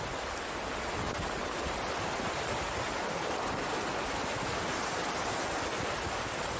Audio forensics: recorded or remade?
recorded